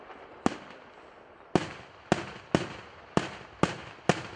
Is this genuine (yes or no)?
yes